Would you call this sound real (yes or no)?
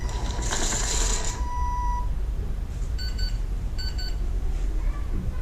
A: no